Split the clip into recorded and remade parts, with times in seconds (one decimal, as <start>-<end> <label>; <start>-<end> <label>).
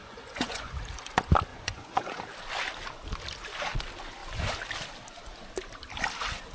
0.0-0.7 remade; 0.7-1.5 recorded; 1.5-2.2 remade; 2.2-6.5 recorded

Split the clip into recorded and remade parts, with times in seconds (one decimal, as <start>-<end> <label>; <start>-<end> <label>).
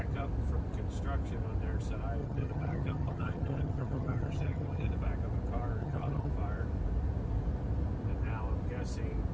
0.0-2.2 recorded; 2.2-4.9 remade; 4.9-5.8 recorded; 5.8-6.3 remade; 6.3-9.3 recorded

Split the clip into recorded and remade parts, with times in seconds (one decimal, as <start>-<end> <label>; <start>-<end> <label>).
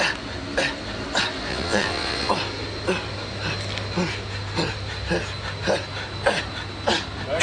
0.0-1.5 recorded; 1.5-2.3 remade; 2.3-7.4 recorded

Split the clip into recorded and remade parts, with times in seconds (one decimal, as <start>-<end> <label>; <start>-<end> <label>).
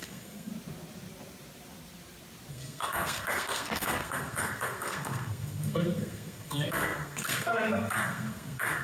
0.0-0.5 remade; 0.5-2.5 recorded; 2.5-8.8 remade